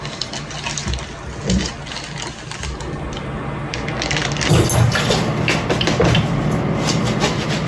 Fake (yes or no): no